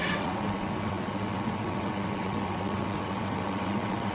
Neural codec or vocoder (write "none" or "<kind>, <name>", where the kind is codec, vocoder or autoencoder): vocoder, WaveNeXt